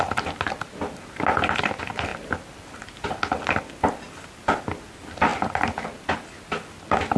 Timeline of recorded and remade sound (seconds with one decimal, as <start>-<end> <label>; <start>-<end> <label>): 0.0-7.2 recorded